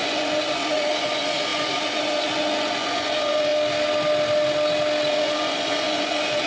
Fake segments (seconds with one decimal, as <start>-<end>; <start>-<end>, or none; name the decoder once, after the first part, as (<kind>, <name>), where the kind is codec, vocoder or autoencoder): 0.0-3.5 (vocoder, Vocos); 5.1-6.5